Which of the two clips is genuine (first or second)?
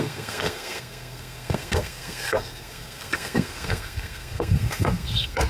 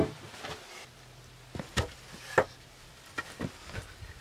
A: second